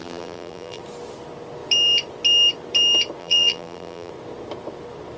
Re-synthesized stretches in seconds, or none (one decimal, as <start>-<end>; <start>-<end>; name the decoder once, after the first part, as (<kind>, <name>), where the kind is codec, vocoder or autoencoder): 0.0-0.8 (vocoder, BigVGAN v2); 3.2-4.1